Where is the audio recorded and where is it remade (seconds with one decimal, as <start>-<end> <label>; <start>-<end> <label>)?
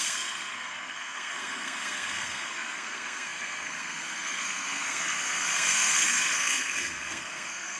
0.0-7.8 remade